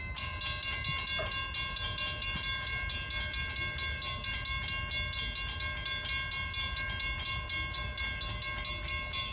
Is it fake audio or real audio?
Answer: real